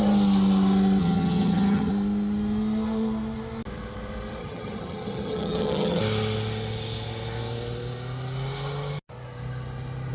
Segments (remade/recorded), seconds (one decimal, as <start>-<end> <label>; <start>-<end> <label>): 0.0-1.0 recorded; 1.0-1.9 remade; 1.9-4.4 recorded; 4.4-6.0 remade; 6.0-10.1 recorded